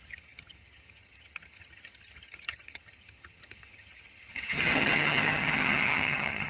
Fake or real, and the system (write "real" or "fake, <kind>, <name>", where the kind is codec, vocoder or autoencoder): fake, vocoder, HiFi-GAN